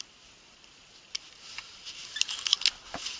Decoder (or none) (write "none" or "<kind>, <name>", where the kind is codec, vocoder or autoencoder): none